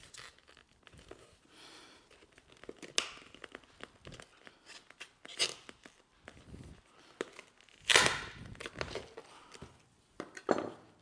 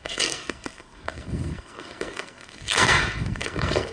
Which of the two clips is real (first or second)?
first